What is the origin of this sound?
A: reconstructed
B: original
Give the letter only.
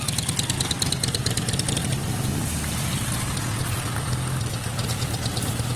B